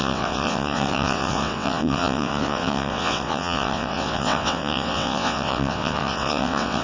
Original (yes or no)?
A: no